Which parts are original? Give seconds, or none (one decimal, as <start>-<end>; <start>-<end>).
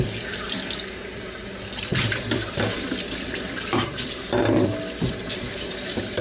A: 0.0-1.9; 5.2-6.2